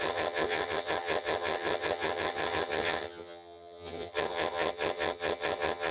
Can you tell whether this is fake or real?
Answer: fake